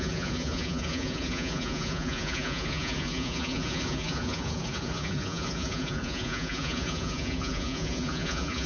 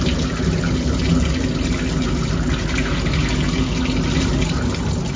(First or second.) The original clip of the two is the second